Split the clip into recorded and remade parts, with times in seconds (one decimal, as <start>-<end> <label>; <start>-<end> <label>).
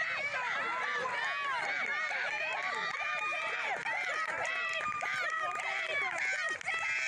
0.0-1.1 remade; 1.1-1.9 recorded; 1.9-5.8 remade; 5.8-7.1 recorded